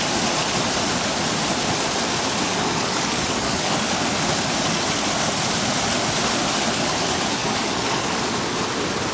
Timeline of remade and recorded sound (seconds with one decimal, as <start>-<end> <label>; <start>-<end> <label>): 0.0-2.5 recorded; 2.5-3.9 remade; 3.9-7.4 recorded; 7.4-8.2 remade; 8.2-9.1 recorded